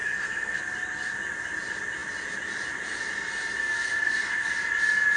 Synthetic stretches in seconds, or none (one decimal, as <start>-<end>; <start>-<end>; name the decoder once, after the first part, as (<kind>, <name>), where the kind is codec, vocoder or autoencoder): 0.0-0.6 (codec, SNAC); 3.6-4.5